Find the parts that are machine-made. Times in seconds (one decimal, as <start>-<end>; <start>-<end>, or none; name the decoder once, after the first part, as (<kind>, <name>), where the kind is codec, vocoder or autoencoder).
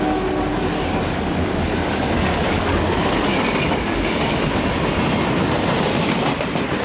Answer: 0.5-4.6 (codec, DAC)